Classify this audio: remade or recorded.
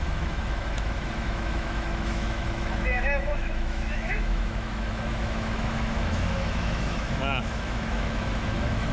remade